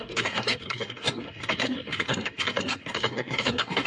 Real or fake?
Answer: fake